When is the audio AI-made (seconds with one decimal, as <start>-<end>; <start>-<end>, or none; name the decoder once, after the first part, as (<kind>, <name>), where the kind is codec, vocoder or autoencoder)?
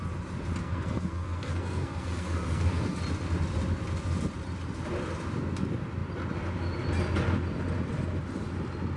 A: 0.6-3.0 (codec, SNAC)